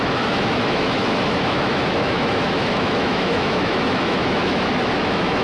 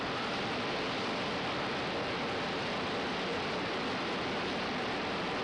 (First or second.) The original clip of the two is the second